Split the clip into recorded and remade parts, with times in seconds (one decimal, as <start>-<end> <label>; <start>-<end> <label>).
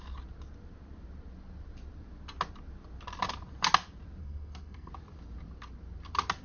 0.0-4.2 recorded; 4.2-4.9 remade; 4.9-6.4 recorded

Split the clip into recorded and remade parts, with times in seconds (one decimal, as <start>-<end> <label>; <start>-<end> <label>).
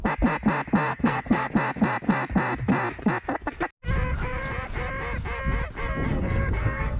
0.0-0.9 recorded; 0.9-1.5 remade; 1.5-6.1 recorded; 6.1-7.0 remade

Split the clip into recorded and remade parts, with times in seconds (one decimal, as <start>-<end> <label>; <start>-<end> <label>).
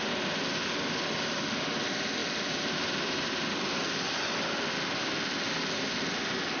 0.0-6.6 recorded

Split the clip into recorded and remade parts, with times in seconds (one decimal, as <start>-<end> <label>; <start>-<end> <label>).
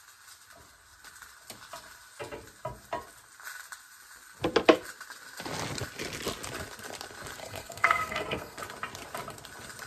0.0-7.4 recorded; 7.4-8.6 remade; 8.6-9.9 recorded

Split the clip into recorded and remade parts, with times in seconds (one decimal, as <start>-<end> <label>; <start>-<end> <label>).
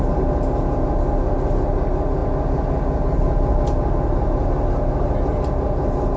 0.0-6.2 recorded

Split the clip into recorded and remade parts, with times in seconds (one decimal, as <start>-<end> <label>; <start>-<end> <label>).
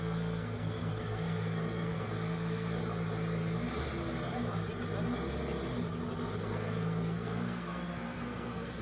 0.0-2.8 remade; 2.8-6.4 recorded; 6.4-8.8 remade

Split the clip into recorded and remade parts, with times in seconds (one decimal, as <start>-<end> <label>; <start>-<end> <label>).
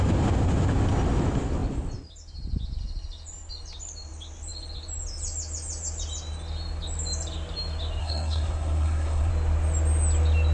0.0-8.0 recorded; 8.0-9.3 remade; 9.3-10.5 recorded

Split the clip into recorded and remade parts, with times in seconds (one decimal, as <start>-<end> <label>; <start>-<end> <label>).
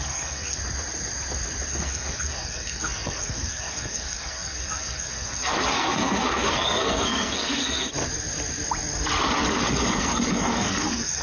0.0-0.6 remade; 0.6-1.7 recorded; 1.7-7.9 remade; 7.9-9.5 recorded; 9.5-11.2 remade